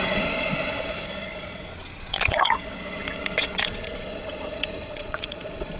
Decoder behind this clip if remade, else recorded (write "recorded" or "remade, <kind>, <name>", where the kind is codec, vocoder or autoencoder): remade, vocoder, Vocos